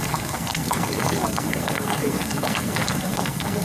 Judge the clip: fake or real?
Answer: fake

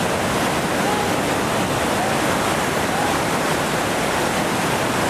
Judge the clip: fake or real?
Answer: real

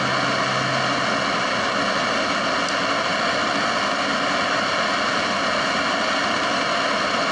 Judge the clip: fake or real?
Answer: real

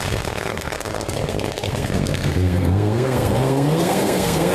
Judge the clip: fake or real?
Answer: fake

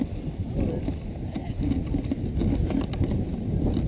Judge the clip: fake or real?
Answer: real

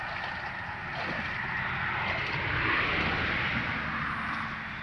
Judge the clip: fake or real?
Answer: real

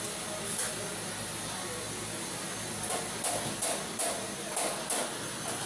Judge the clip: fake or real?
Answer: real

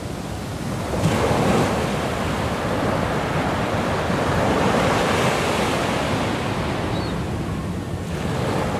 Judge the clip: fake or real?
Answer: real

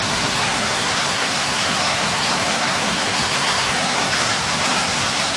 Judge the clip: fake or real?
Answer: fake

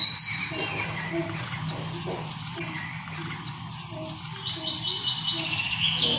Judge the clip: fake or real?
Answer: real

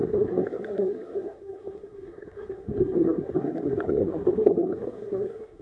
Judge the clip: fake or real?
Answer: fake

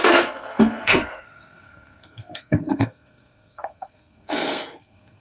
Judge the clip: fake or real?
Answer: fake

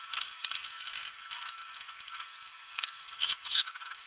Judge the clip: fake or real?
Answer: fake